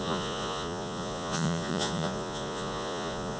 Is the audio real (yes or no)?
no